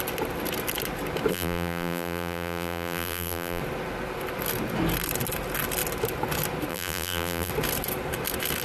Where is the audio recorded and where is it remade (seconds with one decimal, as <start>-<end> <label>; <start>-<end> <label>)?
0.0-1.3 recorded; 1.3-3.6 remade; 3.6-6.7 recorded; 6.7-7.5 remade; 7.5-8.6 recorded